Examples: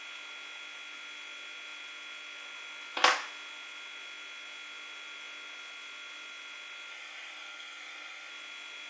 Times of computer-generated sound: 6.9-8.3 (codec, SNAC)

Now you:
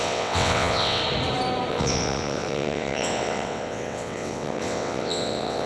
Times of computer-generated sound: 0.0-1.0 (vocoder, WaveNeXt); 1.7-5.7

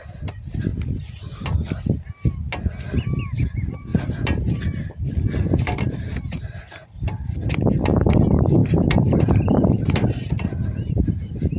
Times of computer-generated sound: 0.0-0.7 (vocoder, BigVGAN v2); 3.4-3.9; 5.6-11.6

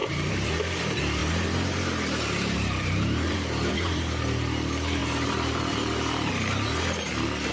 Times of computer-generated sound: 0.0-0.5 (vocoder, BigVGAN v2); 1.2-4.2; 5.0-6.3